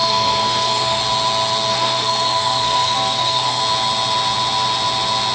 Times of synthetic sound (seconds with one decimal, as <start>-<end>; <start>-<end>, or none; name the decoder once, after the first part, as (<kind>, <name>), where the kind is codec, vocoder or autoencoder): 0.0-1.0 (codec, SNAC); 1.7-3.6